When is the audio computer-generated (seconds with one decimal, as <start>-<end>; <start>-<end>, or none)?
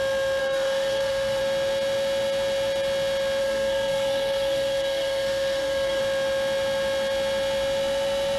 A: 0.4-1.4; 3.4-6.0